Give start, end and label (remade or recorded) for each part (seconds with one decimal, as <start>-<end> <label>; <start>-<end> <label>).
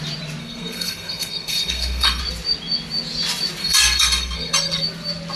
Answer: 0.0-0.4 recorded; 0.4-2.2 remade; 2.2-3.6 recorded; 3.6-4.8 remade; 4.8-5.4 recorded